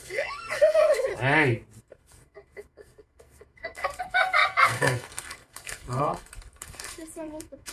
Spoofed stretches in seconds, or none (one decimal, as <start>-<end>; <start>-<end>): 0.0-1.1; 1.8-7.7